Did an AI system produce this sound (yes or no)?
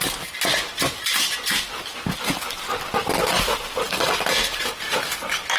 no